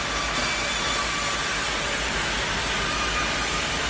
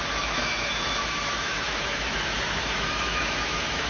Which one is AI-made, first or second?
second